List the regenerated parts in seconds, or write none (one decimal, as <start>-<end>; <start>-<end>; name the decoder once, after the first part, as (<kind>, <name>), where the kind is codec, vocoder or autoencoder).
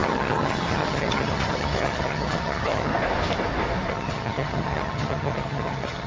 0.0-2.9 (vocoder, HiFi-GAN); 3.9-6.1